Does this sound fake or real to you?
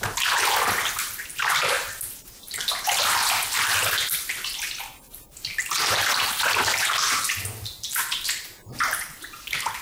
real